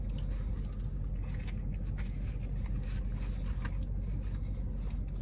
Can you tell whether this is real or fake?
real